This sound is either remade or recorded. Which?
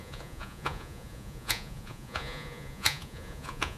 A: remade